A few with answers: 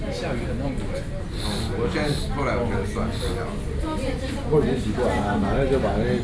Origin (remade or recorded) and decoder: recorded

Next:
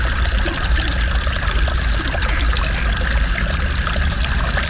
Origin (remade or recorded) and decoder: recorded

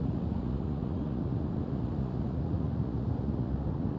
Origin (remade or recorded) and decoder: remade, vocoder, Vocos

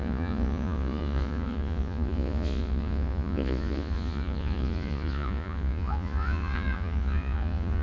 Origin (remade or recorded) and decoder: remade, vocoder, Vocos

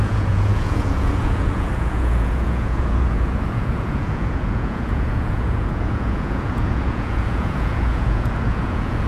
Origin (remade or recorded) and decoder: remade, vocoder, Vocos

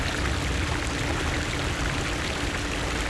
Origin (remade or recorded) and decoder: recorded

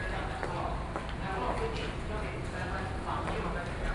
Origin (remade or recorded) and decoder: recorded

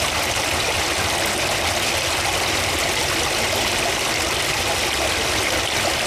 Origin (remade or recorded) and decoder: recorded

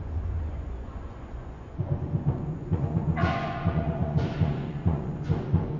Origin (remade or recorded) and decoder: remade, vocoder, Vocos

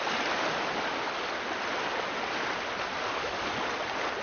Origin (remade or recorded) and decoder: recorded